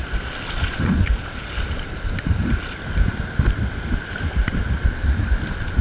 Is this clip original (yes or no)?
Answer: no